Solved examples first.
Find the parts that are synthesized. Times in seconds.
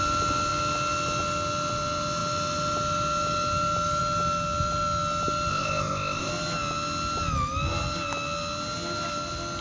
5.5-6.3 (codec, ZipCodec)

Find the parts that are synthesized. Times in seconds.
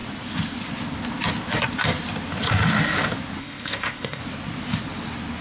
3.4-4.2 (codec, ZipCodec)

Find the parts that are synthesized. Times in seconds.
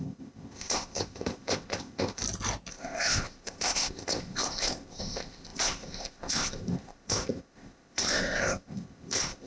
0.0-2.2 (codec, ZipCodec); 2.7-9.5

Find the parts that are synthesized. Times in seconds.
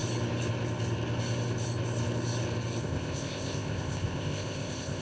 2.8-5.0 (codec, ZipCodec)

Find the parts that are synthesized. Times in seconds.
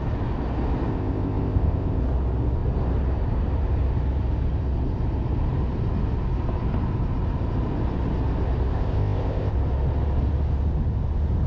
0.9-2.0 (codec, ZipCodec); 8.7-9.5